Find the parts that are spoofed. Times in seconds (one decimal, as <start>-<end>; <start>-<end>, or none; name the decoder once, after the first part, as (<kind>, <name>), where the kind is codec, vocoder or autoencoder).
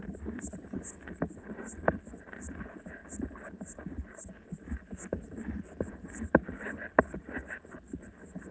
none